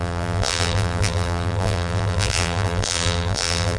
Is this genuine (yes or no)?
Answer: no